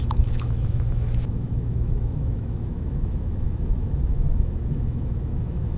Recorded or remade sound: remade